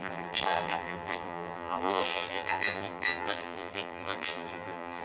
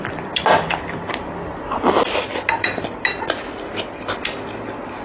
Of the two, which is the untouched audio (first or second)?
second